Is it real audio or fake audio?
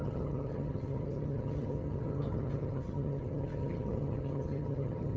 fake